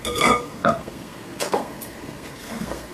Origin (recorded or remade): remade